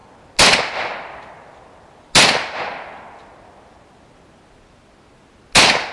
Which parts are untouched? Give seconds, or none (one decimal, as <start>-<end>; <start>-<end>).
0.0-5.9